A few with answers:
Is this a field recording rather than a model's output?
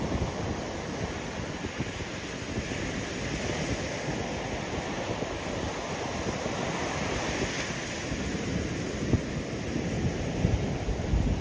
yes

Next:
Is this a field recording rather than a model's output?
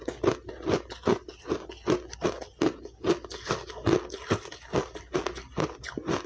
yes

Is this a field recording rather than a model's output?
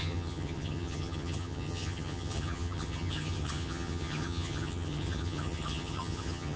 no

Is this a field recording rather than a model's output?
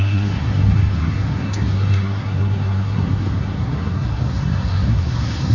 no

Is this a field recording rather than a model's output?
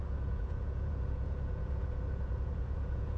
no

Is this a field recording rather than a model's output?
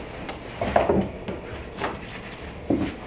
yes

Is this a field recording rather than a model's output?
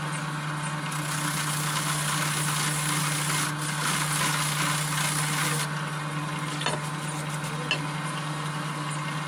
yes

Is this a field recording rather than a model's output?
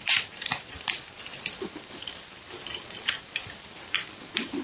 no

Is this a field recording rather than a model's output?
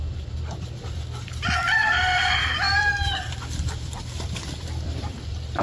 no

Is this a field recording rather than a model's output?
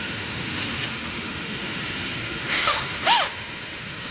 no